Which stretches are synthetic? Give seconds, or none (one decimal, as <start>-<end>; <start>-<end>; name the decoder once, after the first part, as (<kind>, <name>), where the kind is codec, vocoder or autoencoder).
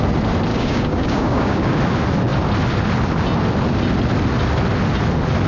0.5-1.8 (codec, DAC)